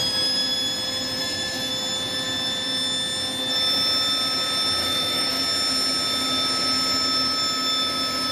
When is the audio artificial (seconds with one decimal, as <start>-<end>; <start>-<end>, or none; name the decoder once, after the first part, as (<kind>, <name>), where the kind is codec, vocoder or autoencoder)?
1.2-1.7 (autoencoder, DAC-VAE); 4.8-5.4